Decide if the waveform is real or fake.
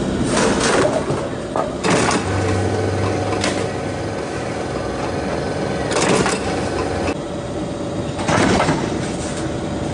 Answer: real